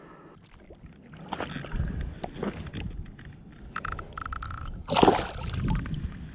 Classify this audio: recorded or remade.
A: recorded